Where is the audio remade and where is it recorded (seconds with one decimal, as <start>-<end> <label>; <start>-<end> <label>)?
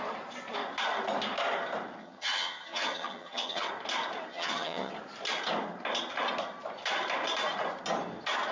0.0-2.0 recorded; 2.0-3.7 remade; 3.7-4.3 recorded; 4.3-4.9 remade; 4.9-8.5 recorded